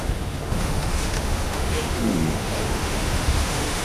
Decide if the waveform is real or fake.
fake